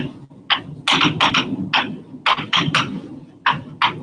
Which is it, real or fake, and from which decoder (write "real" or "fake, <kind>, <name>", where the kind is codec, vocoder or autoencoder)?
real